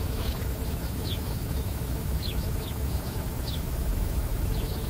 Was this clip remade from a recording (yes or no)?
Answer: yes